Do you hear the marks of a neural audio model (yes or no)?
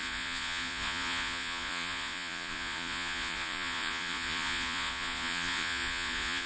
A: yes